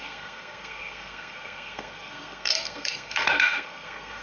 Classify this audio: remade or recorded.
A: remade